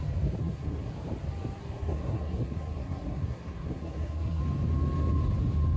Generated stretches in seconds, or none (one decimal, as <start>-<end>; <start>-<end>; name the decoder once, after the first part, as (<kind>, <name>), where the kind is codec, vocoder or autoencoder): 0.4-0.9 (codec, SNAC); 1.6-4.4